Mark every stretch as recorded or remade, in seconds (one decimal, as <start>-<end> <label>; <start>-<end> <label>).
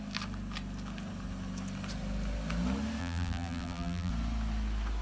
0.0-3.0 recorded; 3.0-4.1 remade; 4.1-5.0 recorded